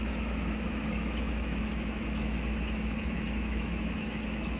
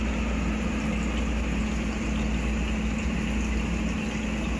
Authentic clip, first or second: second